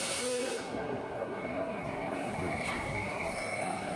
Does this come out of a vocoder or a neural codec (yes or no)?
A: yes